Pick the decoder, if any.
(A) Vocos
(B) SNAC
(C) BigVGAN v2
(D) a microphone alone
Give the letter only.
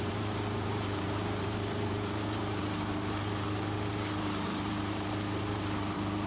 C